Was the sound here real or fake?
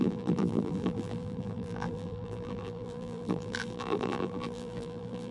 fake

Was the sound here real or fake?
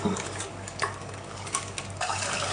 fake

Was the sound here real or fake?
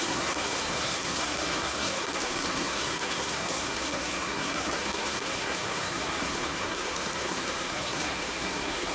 fake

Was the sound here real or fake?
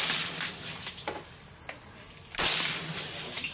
real